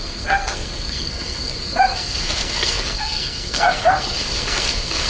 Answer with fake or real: fake